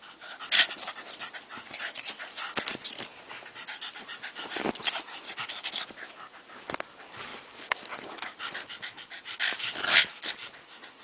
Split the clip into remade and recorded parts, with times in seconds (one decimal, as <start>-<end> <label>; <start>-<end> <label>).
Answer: 0.0-7.3 recorded; 7.3-9.8 remade; 9.8-11.0 recorded